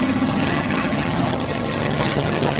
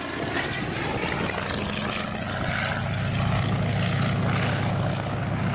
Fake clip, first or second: first